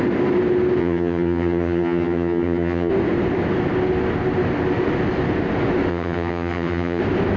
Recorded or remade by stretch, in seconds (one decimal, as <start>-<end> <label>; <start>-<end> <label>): 0.0-0.8 recorded; 0.8-2.9 remade; 2.9-5.9 recorded; 5.9-7.0 remade; 7.0-7.4 recorded